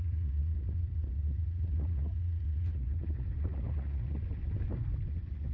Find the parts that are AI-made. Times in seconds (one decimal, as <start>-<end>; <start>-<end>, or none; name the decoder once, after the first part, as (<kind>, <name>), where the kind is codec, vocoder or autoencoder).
0.0-4.2 (vocoder, Vocos); 5.1-5.5